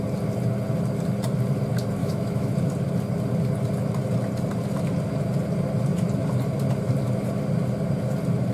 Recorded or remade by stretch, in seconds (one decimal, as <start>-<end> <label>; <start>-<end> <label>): 0.0-2.0 recorded; 2.0-2.5 remade; 2.5-8.5 recorded